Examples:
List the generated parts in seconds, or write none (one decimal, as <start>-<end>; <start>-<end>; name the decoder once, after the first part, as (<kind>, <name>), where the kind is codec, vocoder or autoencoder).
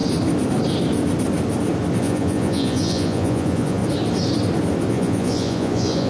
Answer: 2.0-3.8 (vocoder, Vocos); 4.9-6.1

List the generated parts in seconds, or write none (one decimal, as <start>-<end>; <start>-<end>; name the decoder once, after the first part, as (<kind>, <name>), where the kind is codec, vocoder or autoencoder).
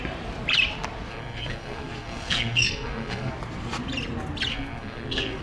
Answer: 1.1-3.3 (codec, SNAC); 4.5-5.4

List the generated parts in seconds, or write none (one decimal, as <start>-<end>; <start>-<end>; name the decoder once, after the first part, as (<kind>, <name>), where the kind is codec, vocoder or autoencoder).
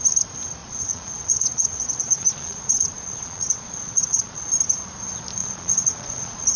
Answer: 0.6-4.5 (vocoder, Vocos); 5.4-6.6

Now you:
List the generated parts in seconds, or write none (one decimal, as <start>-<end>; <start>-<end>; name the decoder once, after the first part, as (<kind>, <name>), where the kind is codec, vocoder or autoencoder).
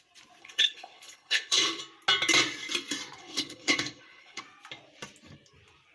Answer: 0.4-1.8 (codec, HILCodec); 3.2-4.4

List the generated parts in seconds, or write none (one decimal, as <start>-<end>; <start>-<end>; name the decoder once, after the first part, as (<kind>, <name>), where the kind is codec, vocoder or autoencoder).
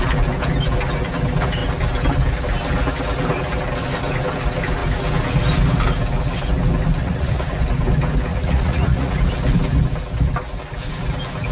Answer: 7.0-7.6 (vocoder, Vocos); 8.3-9.1